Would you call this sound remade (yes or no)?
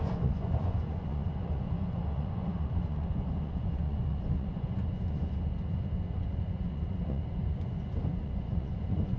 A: yes